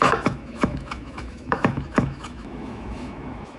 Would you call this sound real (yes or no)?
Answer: no